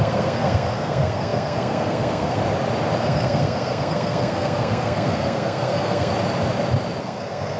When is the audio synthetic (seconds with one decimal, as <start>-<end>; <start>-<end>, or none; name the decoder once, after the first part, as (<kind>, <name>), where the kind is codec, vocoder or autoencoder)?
0.0-2.4 (codec, SNAC); 3.0-6.1; 7.0-7.6